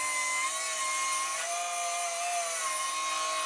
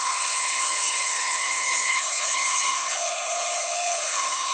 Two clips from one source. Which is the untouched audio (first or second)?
first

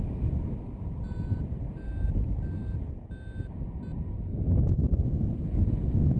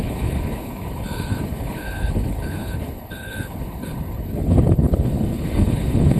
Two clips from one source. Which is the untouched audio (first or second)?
first